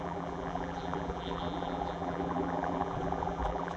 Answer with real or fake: fake